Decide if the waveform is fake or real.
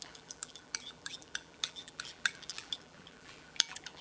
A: fake